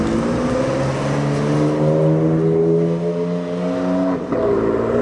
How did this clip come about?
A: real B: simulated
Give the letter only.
A